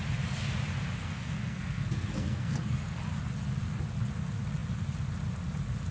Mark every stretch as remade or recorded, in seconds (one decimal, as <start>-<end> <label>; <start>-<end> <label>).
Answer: 0.0-1.0 recorded; 1.0-3.0 remade; 3.0-5.9 recorded